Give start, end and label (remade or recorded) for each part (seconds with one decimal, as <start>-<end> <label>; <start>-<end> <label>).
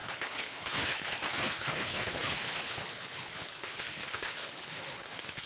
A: 0.0-5.5 remade